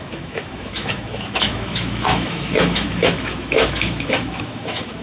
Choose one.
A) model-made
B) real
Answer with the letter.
A